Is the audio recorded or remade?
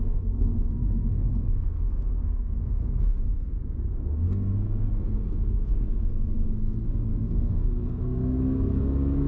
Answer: remade